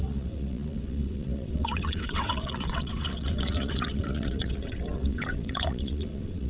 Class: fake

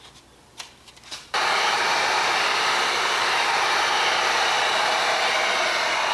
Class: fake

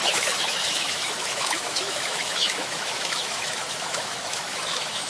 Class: fake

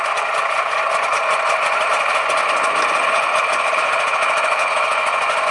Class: fake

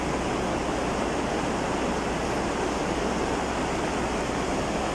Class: real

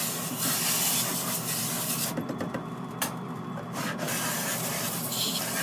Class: fake